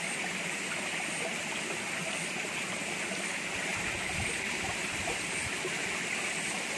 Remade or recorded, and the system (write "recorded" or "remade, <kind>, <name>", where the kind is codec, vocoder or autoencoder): recorded